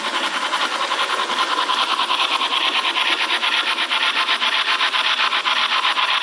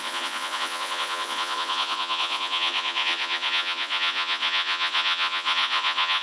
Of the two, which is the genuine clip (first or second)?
first